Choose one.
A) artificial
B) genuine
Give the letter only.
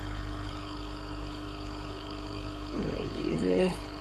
A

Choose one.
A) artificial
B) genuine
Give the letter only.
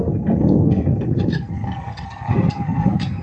A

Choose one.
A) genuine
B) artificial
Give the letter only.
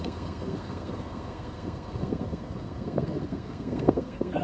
B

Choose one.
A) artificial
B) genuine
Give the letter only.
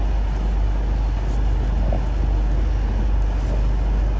B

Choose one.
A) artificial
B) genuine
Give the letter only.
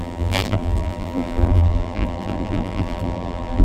A